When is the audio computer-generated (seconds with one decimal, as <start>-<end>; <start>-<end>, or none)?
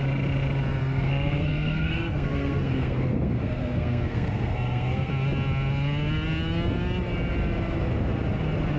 0.8-5.1